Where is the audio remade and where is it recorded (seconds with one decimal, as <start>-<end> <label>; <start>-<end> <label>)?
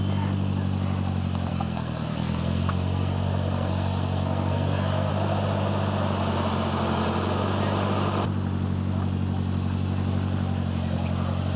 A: 0.0-1.5 recorded; 1.5-5.1 remade; 5.1-11.6 recorded